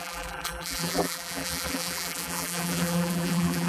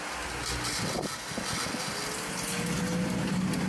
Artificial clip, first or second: first